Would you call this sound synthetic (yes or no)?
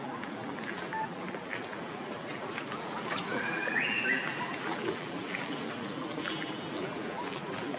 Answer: yes